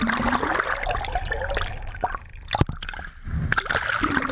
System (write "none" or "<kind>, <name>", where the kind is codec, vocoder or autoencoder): none